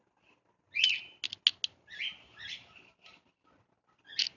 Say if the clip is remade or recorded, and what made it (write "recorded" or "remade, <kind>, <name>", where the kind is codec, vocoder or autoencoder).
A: recorded